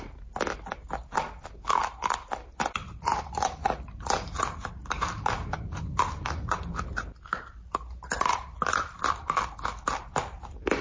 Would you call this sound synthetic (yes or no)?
no